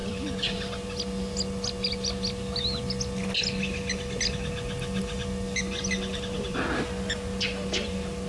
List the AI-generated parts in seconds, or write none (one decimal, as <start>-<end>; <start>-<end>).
none